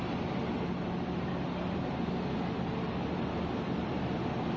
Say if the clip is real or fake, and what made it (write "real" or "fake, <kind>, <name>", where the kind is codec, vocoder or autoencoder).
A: real